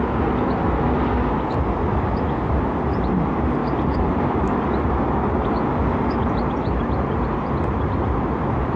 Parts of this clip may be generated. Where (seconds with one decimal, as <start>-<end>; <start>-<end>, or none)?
none